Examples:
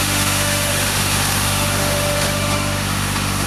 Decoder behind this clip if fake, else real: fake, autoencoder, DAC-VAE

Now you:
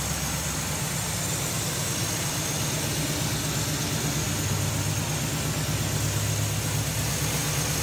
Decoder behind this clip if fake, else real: real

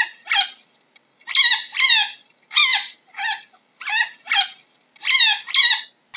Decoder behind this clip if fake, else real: real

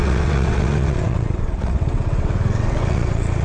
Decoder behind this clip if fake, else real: fake, vocoder, WaveNeXt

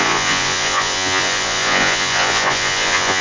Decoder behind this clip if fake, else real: fake, vocoder, Vocos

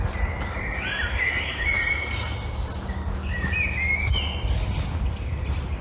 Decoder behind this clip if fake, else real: real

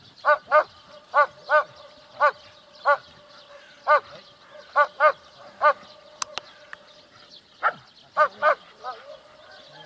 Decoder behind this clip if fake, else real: real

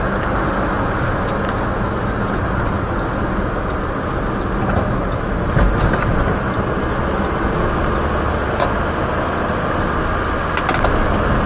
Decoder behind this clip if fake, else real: real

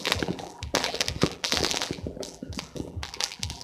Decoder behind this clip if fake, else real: fake, vocoder, BigVGAN v2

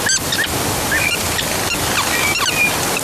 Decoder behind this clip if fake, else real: real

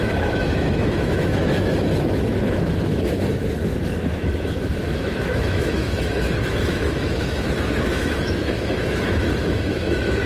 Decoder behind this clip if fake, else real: fake, autoencoder, DAC-VAE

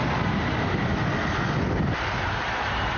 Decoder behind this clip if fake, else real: real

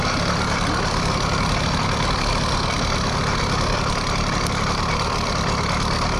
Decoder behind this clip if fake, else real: real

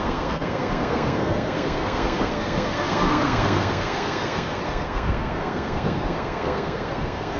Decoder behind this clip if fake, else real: fake, codec, SNAC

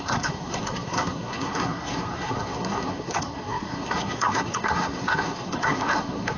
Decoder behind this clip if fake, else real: fake, codec, SNAC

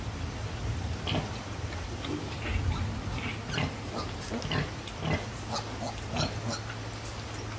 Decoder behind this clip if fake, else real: real